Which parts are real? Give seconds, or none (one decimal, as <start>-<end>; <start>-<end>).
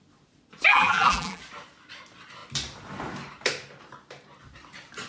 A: 0.0-0.7; 1.4-5.1